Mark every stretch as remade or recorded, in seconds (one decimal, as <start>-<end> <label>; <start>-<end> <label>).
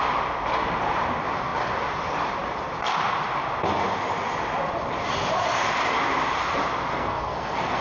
0.0-6.9 recorded; 6.9-7.8 remade